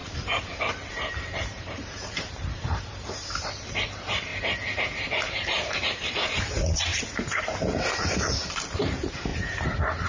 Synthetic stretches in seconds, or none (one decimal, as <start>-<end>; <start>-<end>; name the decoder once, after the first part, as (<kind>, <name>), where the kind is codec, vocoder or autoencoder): 0.0-4.3 (vocoder, BigVGAN v2); 4.8-6.9; 8.5-10.1